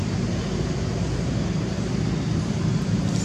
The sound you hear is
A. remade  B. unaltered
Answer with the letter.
B